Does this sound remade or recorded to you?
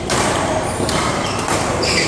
remade